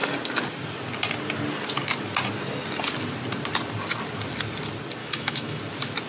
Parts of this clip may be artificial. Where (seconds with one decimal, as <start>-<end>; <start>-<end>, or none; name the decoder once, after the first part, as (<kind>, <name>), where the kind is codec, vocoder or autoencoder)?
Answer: 5.0-5.6 (autoencoder, DAC-VAE)